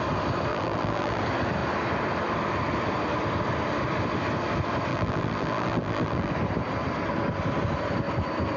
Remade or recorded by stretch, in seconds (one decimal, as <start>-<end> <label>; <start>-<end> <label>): 0.0-0.5 recorded; 0.5-1.2 remade; 1.2-4.9 recorded; 4.9-6.3 remade; 6.3-8.6 recorded